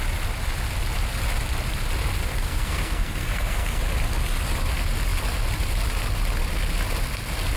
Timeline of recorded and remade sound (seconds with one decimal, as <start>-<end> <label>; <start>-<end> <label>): 0.0-2.2 recorded; 2.2-3.8 remade; 3.8-7.6 recorded